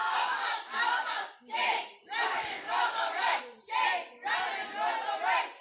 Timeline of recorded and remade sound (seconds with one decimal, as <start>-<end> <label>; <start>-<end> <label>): 0.0-3.4 remade; 3.4-5.6 recorded